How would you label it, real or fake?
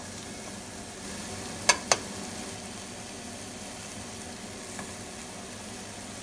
real